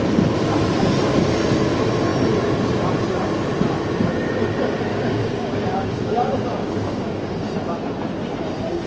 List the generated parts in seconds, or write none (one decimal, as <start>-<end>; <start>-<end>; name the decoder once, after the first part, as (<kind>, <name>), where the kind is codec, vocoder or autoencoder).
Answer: 4.9-7.5 (codec, DAC)